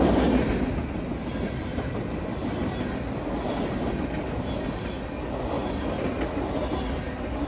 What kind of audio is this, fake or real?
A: real